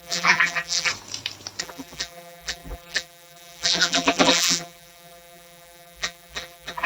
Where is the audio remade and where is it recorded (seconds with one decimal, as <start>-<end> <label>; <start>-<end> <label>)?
0.0-0.9 remade; 0.9-1.6 recorded; 1.6-6.9 remade